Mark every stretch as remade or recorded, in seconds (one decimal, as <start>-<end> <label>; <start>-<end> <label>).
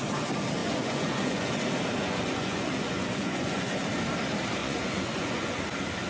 0.0-0.6 recorded; 0.6-1.5 remade; 1.5-2.0 recorded; 2.0-3.8 remade; 3.8-4.6 recorded; 4.6-5.6 remade; 5.6-6.1 recorded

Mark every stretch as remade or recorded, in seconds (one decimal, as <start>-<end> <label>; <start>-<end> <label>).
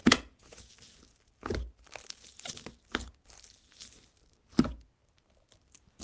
0.0-0.7 remade; 0.7-6.0 recorded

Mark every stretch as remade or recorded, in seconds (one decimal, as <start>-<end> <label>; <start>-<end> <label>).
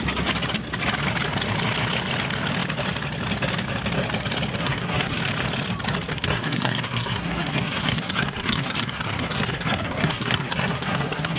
0.0-4.6 recorded; 4.6-5.2 remade; 5.2-6.1 recorded; 6.1-11.4 remade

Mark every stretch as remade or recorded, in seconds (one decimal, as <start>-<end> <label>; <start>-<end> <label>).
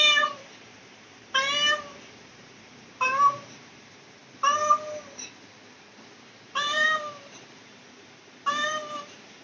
0.0-4.2 remade; 4.2-6.2 recorded; 6.2-9.4 remade